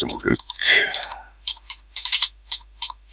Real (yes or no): no